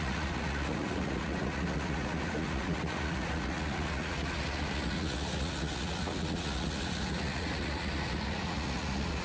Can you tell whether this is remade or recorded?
remade